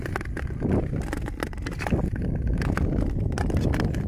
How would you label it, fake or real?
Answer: real